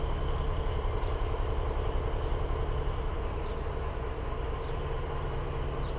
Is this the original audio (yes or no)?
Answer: yes